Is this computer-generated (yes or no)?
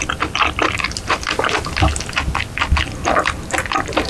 no